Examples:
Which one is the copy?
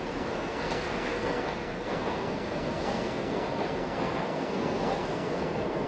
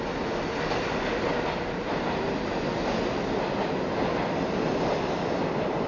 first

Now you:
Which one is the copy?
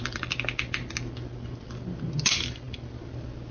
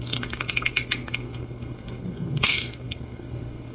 second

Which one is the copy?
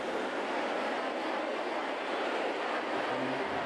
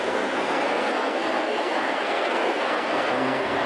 second